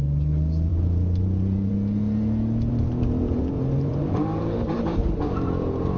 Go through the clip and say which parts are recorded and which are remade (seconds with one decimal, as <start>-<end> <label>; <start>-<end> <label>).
0.0-0.7 recorded; 0.7-1.7 remade; 1.7-2.7 recorded; 2.7-6.0 remade